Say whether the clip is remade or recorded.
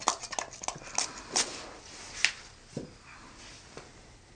recorded